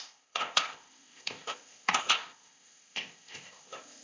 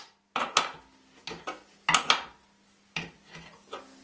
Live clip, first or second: second